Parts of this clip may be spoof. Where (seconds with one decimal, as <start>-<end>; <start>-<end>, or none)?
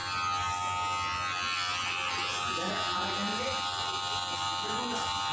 3.3-5.3